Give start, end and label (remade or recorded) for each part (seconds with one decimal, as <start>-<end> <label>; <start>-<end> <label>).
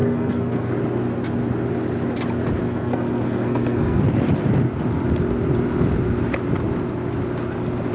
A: 0.0-0.7 remade; 0.7-2.6 recorded; 2.6-4.0 remade; 4.0-7.9 recorded